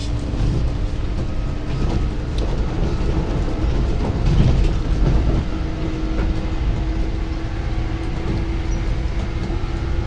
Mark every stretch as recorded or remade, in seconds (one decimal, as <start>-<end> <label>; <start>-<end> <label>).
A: 0.0-10.1 recorded